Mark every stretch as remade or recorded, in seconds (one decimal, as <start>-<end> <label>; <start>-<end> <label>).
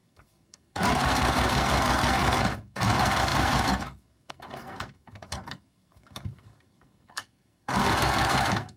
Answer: 0.0-8.8 remade